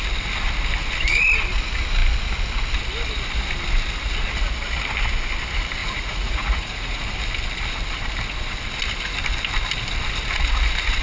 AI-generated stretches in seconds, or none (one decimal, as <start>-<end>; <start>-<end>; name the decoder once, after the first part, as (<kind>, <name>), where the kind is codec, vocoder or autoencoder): 5.8-7.0 (vocoder, Vocos)